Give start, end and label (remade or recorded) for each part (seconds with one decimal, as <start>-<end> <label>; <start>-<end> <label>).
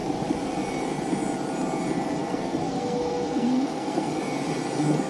0.0-2.2 recorded; 2.2-4.2 remade; 4.2-5.1 recorded